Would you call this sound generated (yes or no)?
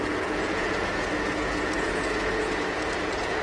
yes